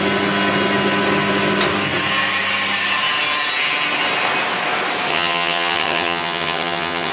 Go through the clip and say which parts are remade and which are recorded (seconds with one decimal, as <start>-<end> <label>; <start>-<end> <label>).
0.0-5.1 recorded; 5.1-7.1 remade